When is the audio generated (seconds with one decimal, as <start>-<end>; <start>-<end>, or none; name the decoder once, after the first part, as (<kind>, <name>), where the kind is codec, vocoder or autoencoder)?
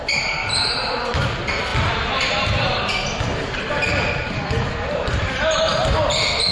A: none